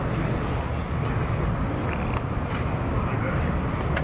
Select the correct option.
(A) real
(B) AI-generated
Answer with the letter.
A